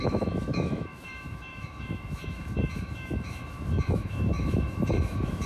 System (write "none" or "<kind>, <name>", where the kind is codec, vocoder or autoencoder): autoencoder, DAC-VAE